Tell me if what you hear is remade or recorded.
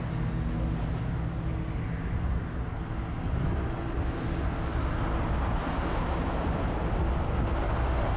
recorded